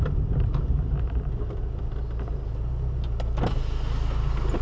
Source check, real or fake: real